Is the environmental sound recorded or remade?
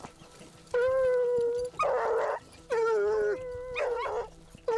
recorded